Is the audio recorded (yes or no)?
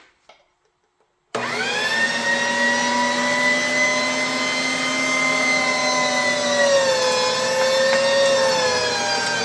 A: yes